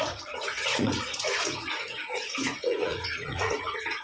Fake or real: fake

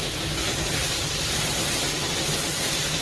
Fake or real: real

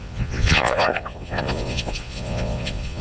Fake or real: fake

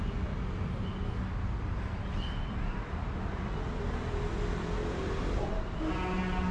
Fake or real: real